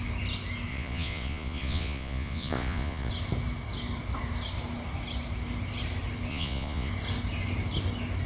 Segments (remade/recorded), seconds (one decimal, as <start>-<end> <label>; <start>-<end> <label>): 0.0-0.7 recorded; 0.7-3.1 remade; 3.1-6.3 recorded; 6.3-6.9 remade; 6.9-8.3 recorded